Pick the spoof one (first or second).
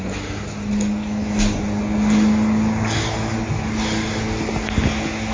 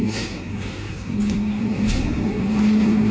second